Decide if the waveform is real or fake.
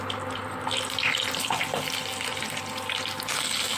real